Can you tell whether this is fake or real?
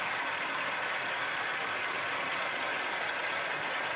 fake